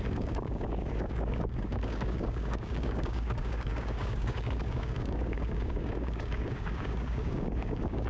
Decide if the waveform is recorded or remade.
remade